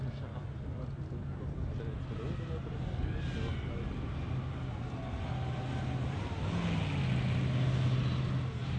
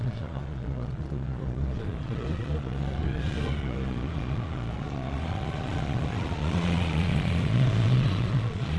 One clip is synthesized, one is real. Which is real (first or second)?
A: first